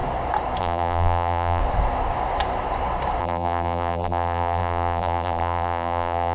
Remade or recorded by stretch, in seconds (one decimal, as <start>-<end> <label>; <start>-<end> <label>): 0.0-0.6 recorded; 0.6-1.6 remade; 1.6-3.2 recorded; 3.2-6.3 remade

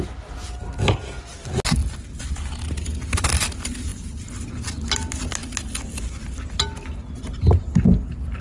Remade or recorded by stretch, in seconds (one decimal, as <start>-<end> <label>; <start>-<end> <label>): 0.0-1.8 recorded; 1.8-3.5 remade; 3.5-3.9 recorded; 3.9-4.5 remade; 4.5-5.4 recorded; 5.4-6.4 remade; 6.4-8.4 recorded

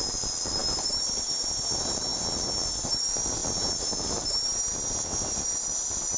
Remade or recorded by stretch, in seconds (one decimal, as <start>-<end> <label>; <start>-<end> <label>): 0.0-3.4 remade; 3.4-5.4 recorded; 5.4-6.2 remade

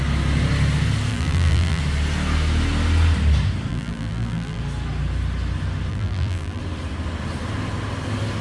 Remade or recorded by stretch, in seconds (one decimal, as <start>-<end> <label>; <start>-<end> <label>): 0.0-1.1 recorded; 1.1-1.8 remade; 1.8-3.7 recorded; 3.7-4.6 remade; 4.6-5.9 recorded; 5.9-6.6 remade; 6.6-8.4 recorded

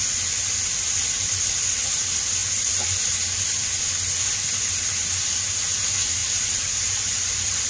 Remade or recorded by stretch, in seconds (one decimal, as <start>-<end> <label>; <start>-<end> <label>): 0.0-6.2 recorded; 6.2-7.7 remade